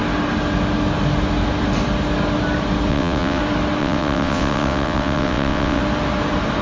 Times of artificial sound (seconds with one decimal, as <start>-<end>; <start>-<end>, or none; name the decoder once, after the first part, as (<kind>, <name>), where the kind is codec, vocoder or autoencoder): 2.9-3.4 (vocoder, WaveNeXt); 3.8-5.8